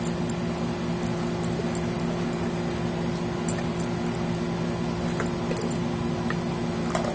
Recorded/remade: recorded